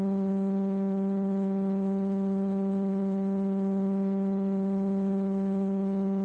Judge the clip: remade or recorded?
remade